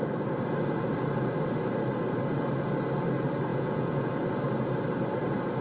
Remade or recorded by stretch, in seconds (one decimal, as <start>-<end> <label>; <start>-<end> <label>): 0.0-3.5 recorded; 3.5-4.1 remade; 4.1-5.6 recorded